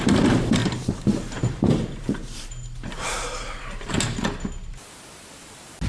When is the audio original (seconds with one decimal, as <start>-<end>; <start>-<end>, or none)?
0.0-0.6; 3.9-5.9